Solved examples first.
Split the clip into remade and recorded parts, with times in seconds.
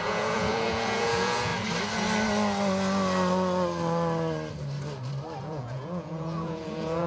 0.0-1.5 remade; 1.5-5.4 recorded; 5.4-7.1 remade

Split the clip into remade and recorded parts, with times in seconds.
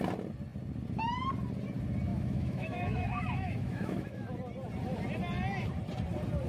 0.0-2.1 recorded; 2.1-4.3 remade; 4.3-6.5 recorded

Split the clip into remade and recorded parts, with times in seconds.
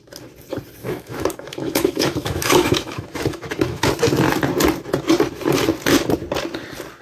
0.0-0.8 recorded; 0.8-3.9 remade; 3.9-7.0 recorded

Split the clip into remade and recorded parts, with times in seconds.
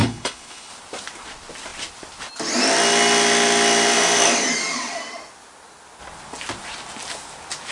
0.0-0.7 remade; 0.7-7.7 recorded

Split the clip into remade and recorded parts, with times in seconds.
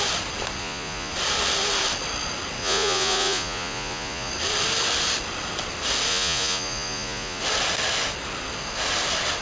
0.0-0.6 recorded; 0.6-1.1 remade; 1.1-2.6 recorded; 2.6-4.3 remade; 4.3-6.1 recorded; 6.1-7.4 remade; 7.4-9.4 recorded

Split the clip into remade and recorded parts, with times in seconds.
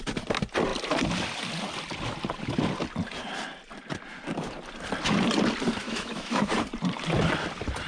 0.0-5.8 recorded; 5.8-6.5 remade; 6.5-7.9 recorded